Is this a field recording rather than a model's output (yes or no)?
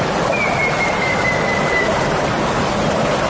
yes